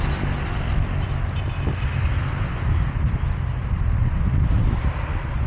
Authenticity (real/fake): real